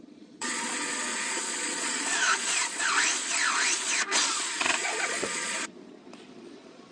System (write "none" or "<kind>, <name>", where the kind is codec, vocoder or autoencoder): vocoder, Vocos